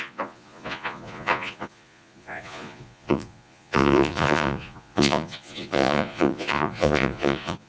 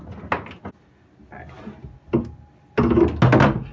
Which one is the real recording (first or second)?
second